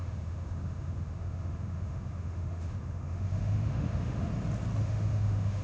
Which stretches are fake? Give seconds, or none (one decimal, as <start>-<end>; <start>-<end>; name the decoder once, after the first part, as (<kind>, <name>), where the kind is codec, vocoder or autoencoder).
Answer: 0.0-4.3 (autoencoder, DAC-VAE); 4.8-5.6